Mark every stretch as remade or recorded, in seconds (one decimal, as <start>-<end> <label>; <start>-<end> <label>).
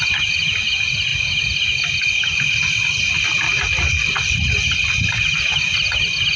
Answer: 0.0-6.4 recorded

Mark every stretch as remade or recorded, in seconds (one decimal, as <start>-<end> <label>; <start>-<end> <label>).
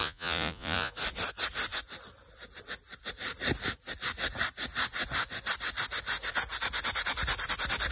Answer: 0.0-0.9 remade; 0.9-7.9 recorded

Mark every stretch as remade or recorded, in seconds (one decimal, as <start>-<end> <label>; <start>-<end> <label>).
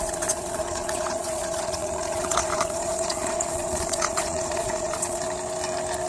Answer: 0.0-5.2 remade; 5.2-6.1 recorded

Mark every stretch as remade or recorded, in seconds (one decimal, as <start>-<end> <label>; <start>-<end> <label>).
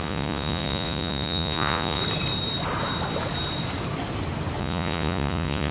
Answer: 0.0-2.0 remade; 2.0-4.6 recorded; 4.6-5.7 remade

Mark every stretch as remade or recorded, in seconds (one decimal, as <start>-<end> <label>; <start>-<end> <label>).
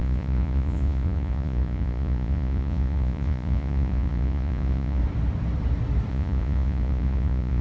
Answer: 0.0-5.0 remade; 5.0-6.1 recorded; 6.1-7.6 remade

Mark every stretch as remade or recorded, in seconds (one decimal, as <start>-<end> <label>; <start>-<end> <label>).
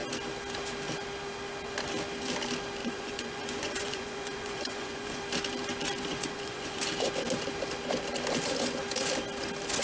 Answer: 0.0-2.8 recorded; 2.8-5.2 remade; 5.2-6.1 recorded; 6.1-6.8 remade; 6.8-9.8 recorded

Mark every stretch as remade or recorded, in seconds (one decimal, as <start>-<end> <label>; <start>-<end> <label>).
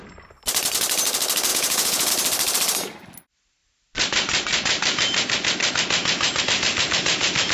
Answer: 0.0-1.5 recorded; 1.5-2.1 remade; 2.1-7.5 recorded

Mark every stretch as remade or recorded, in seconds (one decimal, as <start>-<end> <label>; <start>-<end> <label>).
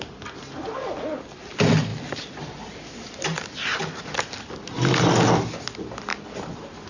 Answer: 0.0-6.9 recorded